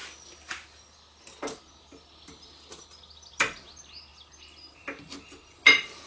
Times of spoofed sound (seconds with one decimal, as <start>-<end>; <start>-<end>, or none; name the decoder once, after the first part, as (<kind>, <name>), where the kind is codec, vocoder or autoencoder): none